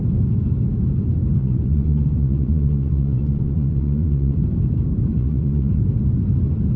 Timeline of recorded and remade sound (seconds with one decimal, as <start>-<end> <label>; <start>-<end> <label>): 0.0-1.4 recorded; 1.4-4.4 remade; 4.4-5.1 recorded; 5.1-5.8 remade; 5.8-6.8 recorded